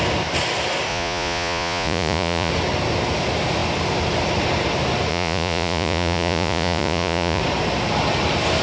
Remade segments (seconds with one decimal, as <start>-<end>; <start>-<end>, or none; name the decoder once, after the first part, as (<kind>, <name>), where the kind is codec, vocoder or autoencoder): 0.9-2.5 (vocoder, Vocos); 5.1-7.4